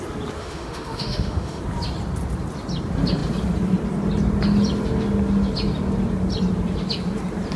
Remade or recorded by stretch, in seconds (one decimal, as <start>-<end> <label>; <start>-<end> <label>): 0.0-0.4 recorded; 0.4-1.6 remade; 1.6-7.6 recorded